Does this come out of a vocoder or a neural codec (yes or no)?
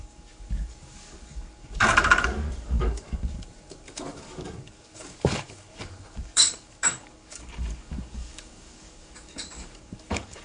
yes